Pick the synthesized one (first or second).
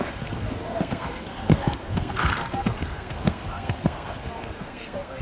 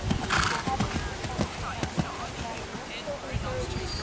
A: first